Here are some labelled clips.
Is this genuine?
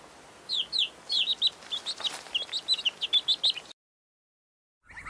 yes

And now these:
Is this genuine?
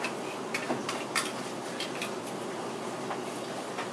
no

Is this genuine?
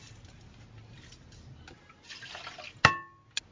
yes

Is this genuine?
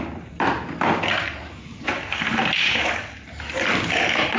yes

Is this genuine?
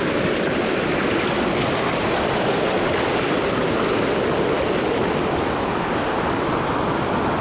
yes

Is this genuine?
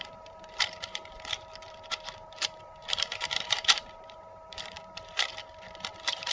no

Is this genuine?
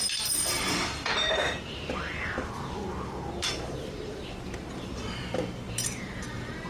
no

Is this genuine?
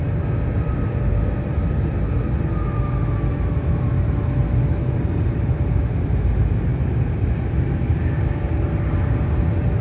yes